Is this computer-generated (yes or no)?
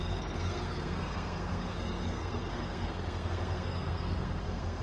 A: yes